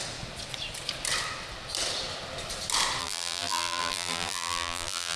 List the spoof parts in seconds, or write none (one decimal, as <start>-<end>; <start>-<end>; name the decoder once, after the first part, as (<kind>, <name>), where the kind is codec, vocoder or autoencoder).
3.0-5.2 (vocoder, BigVGAN v2)